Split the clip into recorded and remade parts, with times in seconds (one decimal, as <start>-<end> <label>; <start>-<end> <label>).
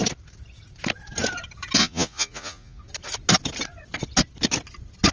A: 0.0-1.8 recorded; 1.8-2.8 remade; 2.8-5.1 recorded